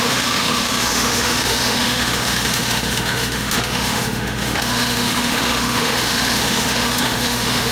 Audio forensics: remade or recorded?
remade